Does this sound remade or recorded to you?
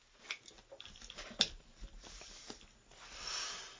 recorded